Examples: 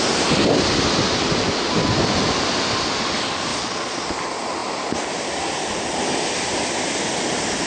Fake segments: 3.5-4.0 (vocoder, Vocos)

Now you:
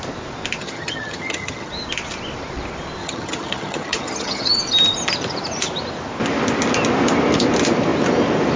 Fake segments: 0.6-1.7 (vocoder, HiFi-GAN); 3.0-4.5

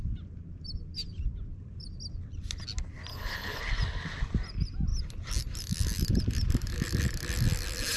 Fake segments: 3.1-3.6 (codec, HILCodec)

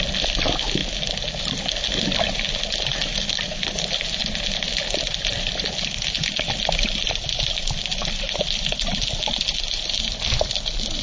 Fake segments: none

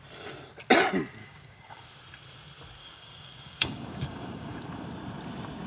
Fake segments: 1.2-1.8 (codec, DAC); 2.8-4.6